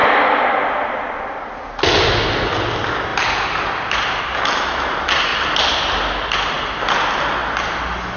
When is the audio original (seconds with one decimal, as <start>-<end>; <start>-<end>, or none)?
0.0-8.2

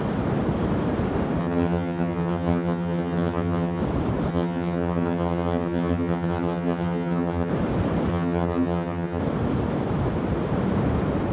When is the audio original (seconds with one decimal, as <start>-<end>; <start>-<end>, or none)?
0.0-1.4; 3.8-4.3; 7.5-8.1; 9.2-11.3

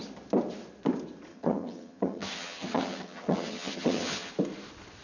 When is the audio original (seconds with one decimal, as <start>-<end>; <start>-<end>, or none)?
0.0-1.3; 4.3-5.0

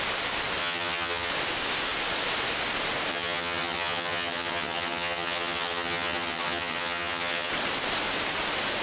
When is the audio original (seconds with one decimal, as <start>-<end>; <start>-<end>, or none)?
0.0-0.6; 1.3-3.1; 7.5-8.8